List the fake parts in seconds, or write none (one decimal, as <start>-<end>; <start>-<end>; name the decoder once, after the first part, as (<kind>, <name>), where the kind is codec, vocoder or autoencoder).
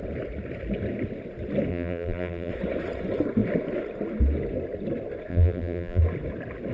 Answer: 1.7-2.5 (vocoder, BigVGAN v2); 5.3-6.0